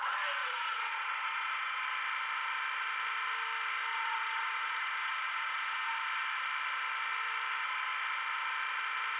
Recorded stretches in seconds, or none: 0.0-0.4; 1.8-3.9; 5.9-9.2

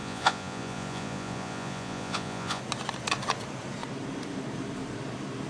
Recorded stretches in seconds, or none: 2.6-5.5

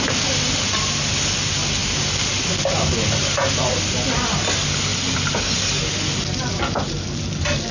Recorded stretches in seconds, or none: 0.0-7.7

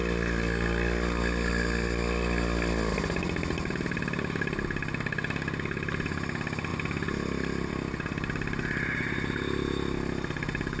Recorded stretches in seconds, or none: 0.0-10.8

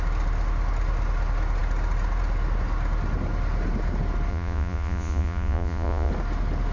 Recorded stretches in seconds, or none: 0.0-4.3; 6.1-6.7

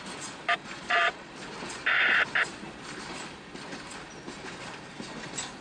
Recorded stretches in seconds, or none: 0.0-0.6; 1.3-5.6